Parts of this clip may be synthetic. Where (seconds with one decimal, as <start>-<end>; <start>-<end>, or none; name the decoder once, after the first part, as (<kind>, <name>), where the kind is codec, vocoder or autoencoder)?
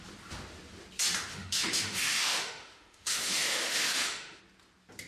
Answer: 1.3-4.4 (autoencoder, DAC-VAE)